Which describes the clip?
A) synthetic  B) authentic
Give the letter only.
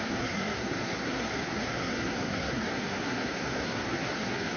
A